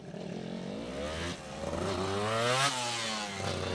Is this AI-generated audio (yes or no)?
no